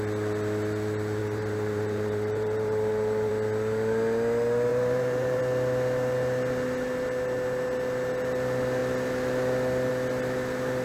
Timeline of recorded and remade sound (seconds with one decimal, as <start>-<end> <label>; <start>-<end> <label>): 0.0-1.2 recorded; 1.2-3.3 remade; 3.3-4.7 recorded; 4.7-5.4 remade; 5.4-10.8 recorded